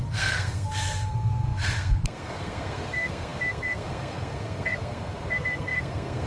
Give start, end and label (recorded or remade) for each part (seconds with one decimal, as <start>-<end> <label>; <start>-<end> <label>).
0.0-6.3 remade